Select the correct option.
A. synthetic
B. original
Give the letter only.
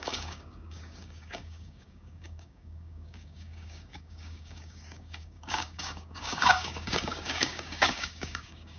A